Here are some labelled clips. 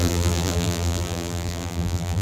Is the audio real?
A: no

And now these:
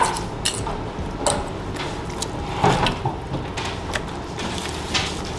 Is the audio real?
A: yes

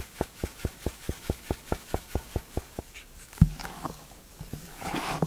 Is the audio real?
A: no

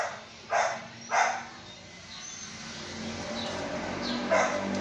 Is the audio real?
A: yes